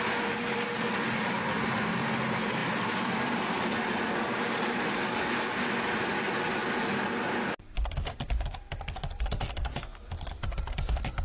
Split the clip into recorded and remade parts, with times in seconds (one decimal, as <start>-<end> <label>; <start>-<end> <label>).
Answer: 0.0-11.2 remade